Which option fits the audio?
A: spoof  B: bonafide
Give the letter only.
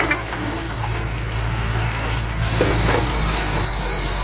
A